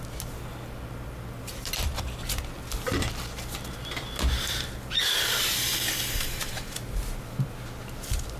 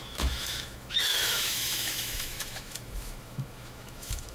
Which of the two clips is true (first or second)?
first